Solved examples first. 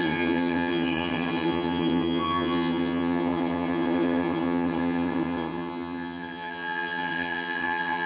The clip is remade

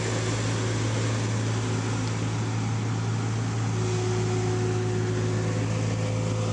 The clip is recorded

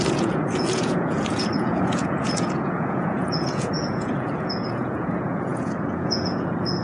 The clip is remade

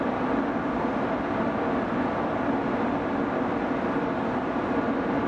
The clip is remade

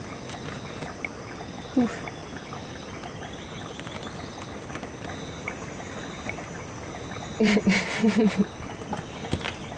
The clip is recorded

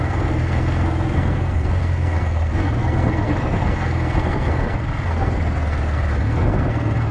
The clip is remade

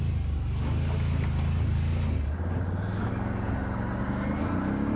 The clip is recorded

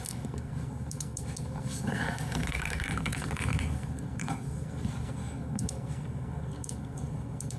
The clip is remade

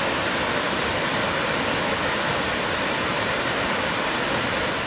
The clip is recorded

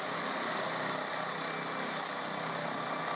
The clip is recorded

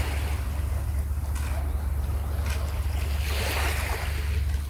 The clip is recorded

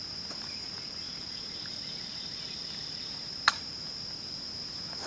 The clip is recorded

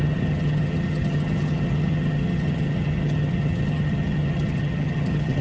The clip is remade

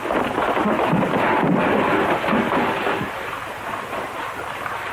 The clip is recorded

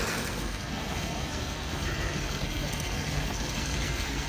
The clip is remade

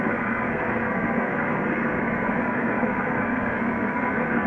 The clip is remade